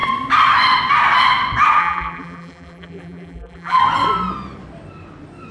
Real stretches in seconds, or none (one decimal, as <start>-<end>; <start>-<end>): 0.0-1.8; 3.8-5.5